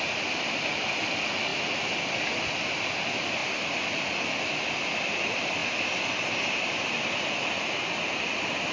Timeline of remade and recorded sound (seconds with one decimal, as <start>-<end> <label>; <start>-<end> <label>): 0.0-1.5 remade; 1.5-2.6 recorded; 2.6-8.7 remade